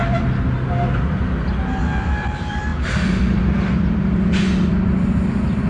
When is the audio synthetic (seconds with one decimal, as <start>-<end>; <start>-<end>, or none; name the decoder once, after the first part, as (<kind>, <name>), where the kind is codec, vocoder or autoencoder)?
1.8-5.7 (vocoder, BigVGAN v2)